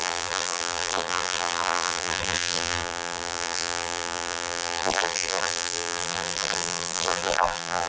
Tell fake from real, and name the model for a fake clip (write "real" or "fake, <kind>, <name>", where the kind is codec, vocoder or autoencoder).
fake, vocoder, BigVGAN v2